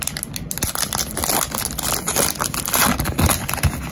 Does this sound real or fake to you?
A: real